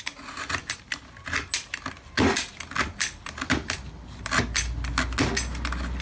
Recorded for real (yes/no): yes